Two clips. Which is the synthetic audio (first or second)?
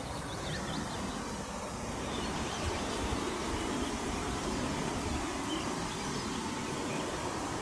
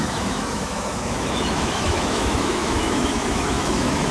second